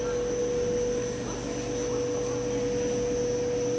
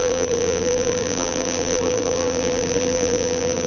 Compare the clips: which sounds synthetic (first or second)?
second